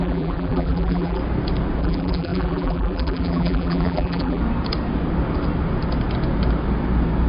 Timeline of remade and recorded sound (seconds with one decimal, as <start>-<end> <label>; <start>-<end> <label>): 0.0-1.2 remade; 1.2-1.8 recorded; 1.8-4.4 remade; 4.4-7.3 recorded